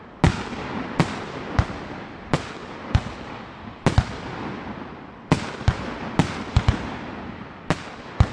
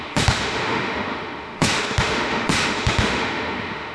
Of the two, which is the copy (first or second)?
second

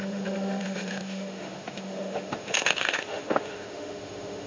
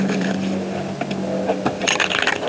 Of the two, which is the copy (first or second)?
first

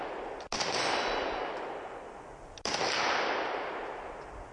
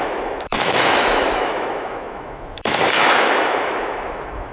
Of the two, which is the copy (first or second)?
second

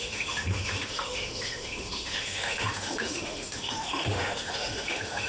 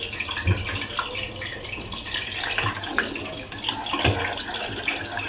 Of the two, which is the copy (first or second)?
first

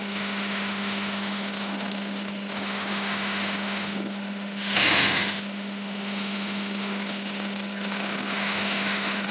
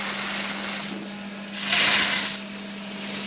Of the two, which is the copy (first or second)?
first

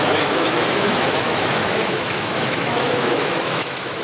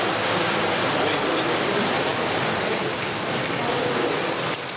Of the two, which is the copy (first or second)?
first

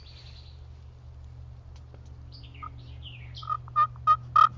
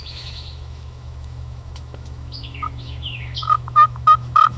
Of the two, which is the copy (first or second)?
second